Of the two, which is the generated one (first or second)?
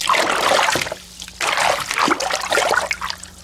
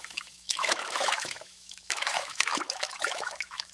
second